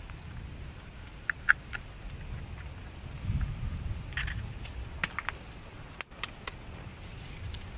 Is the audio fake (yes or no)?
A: no